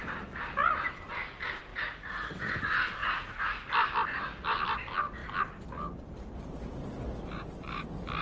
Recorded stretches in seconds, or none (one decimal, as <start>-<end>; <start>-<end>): 0.0-1.7; 2.6-3.0; 3.7-8.2